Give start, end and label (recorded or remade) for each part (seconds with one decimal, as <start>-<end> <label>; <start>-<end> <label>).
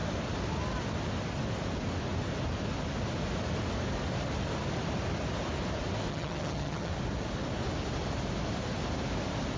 0.0-6.1 recorded; 6.1-6.9 remade; 6.9-9.6 recorded